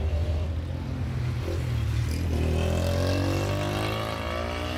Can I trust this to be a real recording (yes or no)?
yes